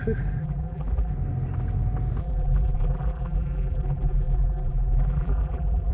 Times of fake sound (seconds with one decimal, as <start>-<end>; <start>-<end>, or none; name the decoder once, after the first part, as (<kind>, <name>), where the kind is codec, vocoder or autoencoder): 0.4-1.1 (vocoder, BigVGAN v2); 2.2-5.9